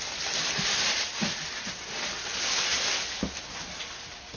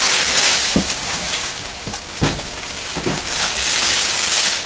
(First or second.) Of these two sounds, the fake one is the second